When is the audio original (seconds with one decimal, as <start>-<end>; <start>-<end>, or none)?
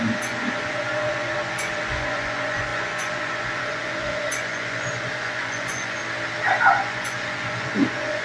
6.0-6.6